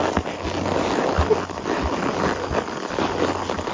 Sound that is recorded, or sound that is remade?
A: recorded